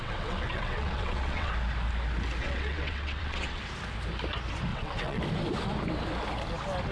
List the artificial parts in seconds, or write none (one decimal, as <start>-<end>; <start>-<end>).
0.0-1.5; 2.4-3.6; 4.7-5.2